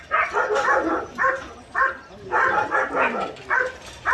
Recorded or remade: recorded